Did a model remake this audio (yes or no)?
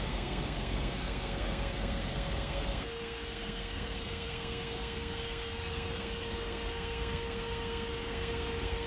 yes